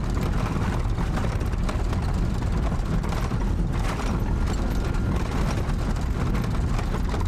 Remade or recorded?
recorded